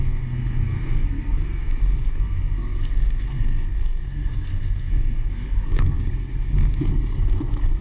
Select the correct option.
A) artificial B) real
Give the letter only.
A